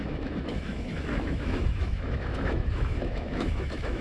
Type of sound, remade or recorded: remade